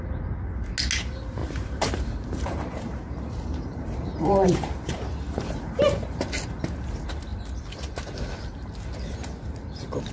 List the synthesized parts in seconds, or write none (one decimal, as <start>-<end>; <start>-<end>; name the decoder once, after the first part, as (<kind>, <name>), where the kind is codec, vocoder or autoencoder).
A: 1.4-5.8 (vocoder, BigVGAN v2)